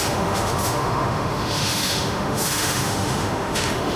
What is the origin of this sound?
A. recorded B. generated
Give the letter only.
B